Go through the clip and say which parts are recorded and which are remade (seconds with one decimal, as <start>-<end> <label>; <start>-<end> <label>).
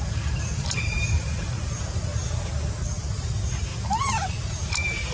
0.0-2.1 remade; 2.1-3.0 recorded; 3.0-3.7 remade; 3.7-4.3 recorded; 4.3-5.1 remade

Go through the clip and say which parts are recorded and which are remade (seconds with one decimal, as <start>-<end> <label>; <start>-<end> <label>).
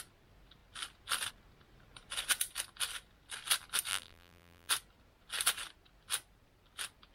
0.0-3.9 recorded; 3.9-4.7 remade; 4.7-7.1 recorded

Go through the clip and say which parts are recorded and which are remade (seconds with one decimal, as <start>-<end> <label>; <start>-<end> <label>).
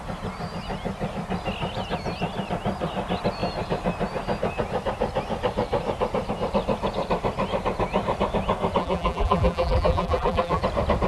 0.0-8.8 recorded; 8.8-10.6 remade; 10.6-11.1 recorded